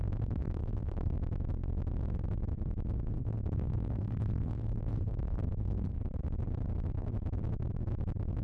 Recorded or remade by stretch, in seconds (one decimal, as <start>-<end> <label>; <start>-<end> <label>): 0.0-1.1 remade; 1.1-3.2 recorded; 3.2-6.0 remade; 6.0-8.4 recorded